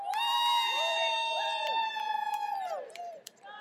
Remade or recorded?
remade